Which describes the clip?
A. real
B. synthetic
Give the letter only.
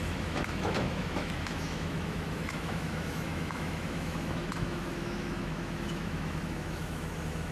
B